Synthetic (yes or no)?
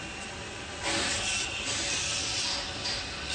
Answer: no